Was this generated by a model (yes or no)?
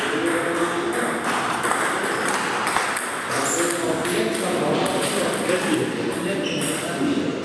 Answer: no